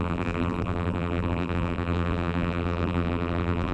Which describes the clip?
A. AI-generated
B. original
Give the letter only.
A